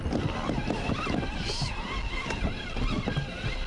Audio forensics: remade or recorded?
recorded